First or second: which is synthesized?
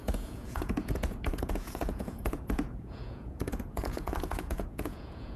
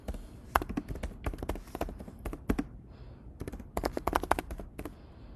first